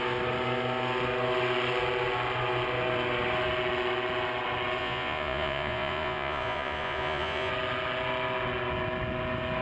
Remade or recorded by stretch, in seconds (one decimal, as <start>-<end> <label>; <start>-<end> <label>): 0.0-4.8 recorded; 4.8-7.5 remade; 7.5-9.6 recorded